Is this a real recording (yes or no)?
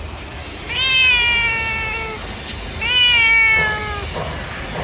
yes